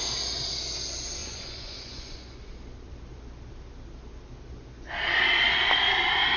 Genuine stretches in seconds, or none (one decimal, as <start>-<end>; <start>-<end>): 0.0-1.2; 2.5-6.4